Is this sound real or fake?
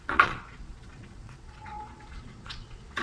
fake